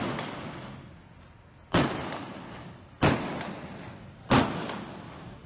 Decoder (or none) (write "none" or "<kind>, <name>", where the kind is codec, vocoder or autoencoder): none